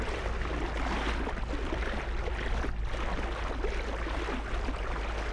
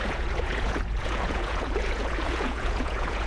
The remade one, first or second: second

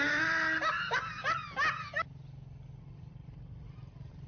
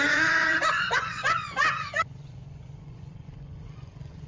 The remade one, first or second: second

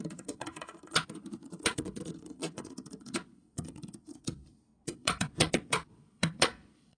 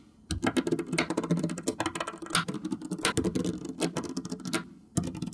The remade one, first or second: first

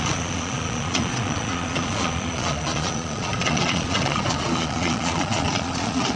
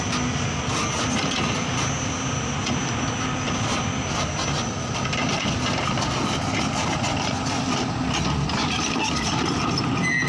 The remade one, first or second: first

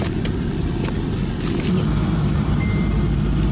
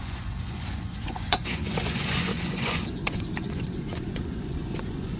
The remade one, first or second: second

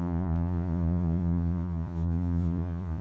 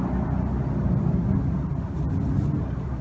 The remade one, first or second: first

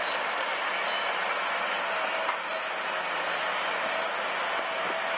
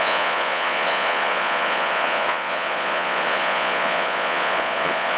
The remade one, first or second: second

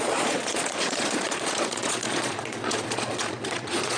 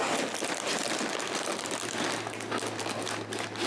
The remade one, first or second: first